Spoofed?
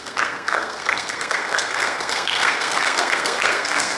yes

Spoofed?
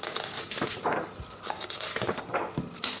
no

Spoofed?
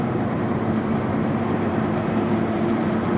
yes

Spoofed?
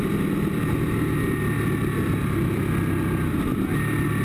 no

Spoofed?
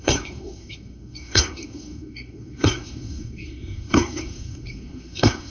yes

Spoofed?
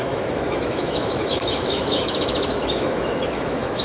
yes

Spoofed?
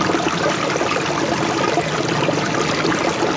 no